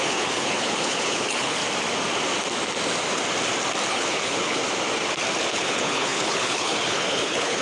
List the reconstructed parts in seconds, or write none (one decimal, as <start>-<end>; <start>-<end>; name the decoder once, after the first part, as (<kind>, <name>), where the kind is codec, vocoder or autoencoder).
0.0-1.6 (codec, HILCodec); 3.9-4.6; 5.5-7.6